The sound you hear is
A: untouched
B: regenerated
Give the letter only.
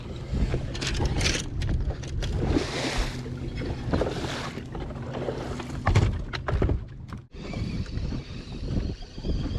A